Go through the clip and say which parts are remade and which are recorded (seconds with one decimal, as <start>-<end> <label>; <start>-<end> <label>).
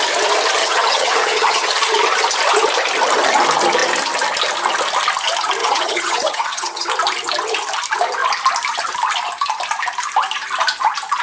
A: 0.0-0.6 recorded; 0.6-1.7 remade; 1.7-5.6 recorded; 5.6-6.9 remade; 6.9-11.2 recorded